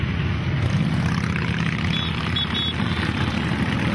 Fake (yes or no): no